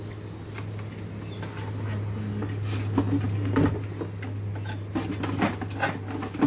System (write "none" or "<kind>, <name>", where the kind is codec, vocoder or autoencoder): none